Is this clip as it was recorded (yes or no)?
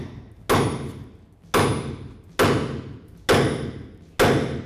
yes